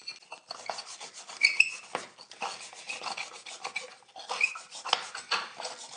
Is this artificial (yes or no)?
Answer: no